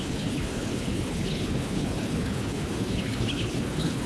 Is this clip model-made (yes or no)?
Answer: yes